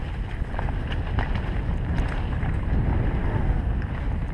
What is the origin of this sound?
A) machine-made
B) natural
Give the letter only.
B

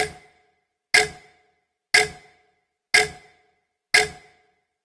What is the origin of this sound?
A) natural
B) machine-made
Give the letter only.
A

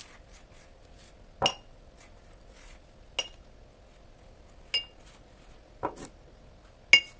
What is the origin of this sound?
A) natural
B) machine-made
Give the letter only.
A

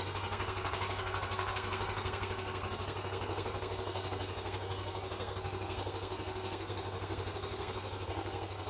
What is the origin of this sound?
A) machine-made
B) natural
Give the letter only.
A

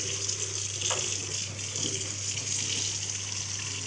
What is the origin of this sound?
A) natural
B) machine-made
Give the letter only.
A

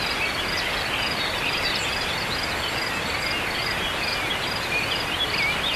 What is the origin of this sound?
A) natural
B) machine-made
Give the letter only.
A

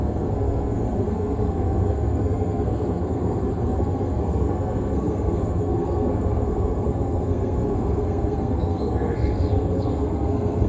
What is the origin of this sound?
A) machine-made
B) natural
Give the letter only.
A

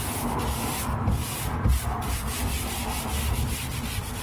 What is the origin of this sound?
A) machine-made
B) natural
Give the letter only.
B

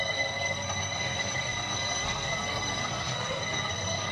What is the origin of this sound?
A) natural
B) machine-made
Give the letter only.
B